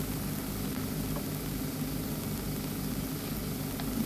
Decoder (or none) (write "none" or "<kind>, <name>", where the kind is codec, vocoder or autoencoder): none